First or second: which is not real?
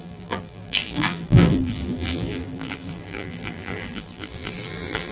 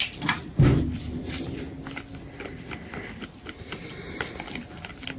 first